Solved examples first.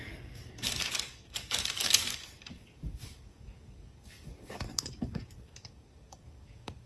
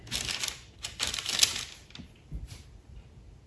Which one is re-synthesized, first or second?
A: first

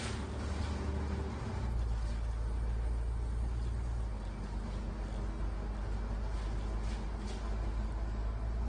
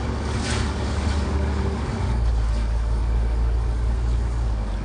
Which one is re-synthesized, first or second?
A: second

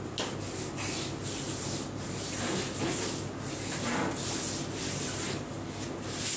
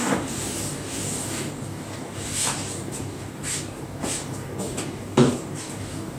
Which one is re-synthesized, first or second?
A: second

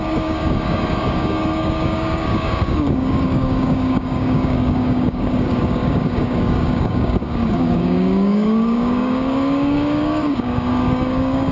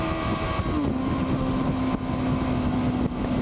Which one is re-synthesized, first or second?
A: first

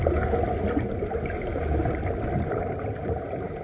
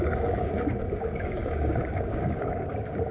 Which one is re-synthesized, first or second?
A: second